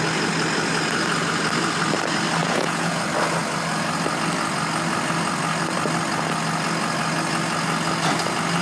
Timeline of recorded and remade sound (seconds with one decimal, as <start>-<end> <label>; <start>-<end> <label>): 0.0-2.4 recorded; 2.4-3.0 remade; 3.0-8.6 recorded